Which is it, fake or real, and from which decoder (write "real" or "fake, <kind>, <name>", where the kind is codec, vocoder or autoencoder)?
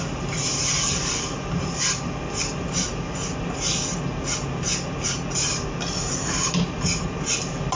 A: real